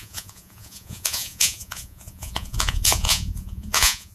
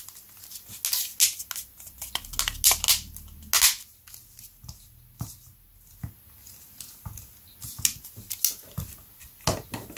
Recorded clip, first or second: second